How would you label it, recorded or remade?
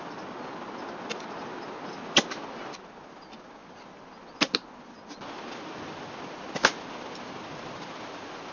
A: recorded